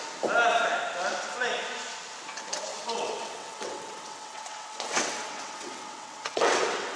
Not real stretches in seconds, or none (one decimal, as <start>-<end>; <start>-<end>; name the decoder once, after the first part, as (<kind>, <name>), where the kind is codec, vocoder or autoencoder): 2.7-7.0 (vocoder, WaveNeXt)